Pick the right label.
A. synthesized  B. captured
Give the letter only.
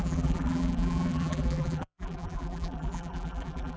A